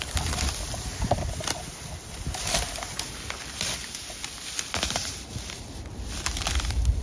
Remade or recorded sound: remade